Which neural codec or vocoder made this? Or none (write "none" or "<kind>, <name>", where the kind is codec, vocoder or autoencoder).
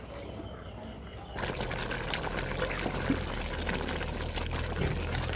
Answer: none